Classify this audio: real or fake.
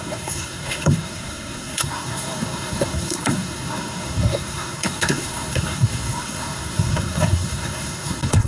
fake